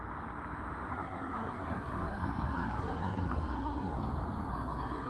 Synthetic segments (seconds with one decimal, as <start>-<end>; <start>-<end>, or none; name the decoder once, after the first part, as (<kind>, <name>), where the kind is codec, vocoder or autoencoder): 0.9-4.0 (codec, SNAC); 4.5-5.1